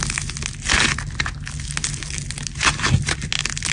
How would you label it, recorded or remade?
recorded